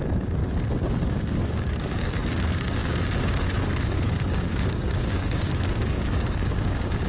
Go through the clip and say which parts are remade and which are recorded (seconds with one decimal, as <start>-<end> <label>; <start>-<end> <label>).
0.0-0.4 remade; 0.4-1.0 recorded; 1.0-7.1 remade